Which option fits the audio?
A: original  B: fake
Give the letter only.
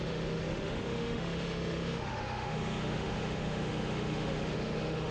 B